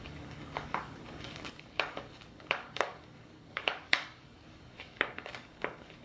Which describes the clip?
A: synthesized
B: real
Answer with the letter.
A